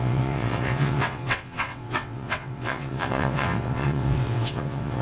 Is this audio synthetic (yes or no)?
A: yes